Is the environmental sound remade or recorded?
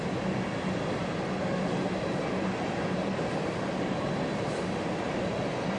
recorded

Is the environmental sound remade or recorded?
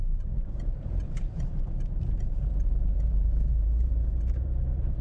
remade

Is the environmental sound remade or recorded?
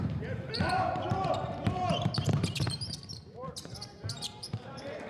remade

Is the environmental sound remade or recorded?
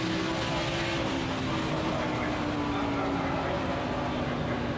recorded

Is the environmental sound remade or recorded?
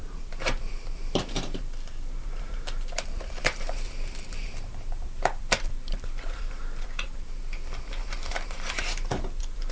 remade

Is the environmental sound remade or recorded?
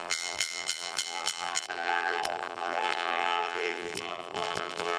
remade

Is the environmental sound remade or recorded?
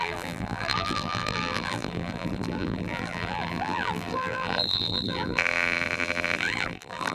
remade